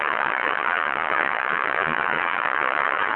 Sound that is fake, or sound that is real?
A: fake